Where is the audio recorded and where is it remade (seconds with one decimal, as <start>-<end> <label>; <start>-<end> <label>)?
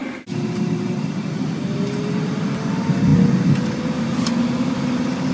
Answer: 0.0-5.3 recorded